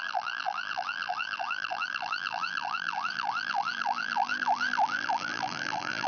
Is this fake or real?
fake